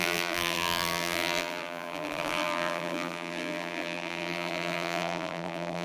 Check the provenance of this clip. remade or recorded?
remade